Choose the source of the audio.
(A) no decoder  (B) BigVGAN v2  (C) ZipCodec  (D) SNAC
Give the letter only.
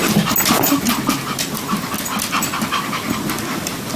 A